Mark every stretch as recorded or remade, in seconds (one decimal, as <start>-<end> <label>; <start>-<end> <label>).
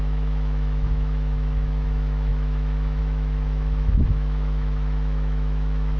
0.0-6.0 remade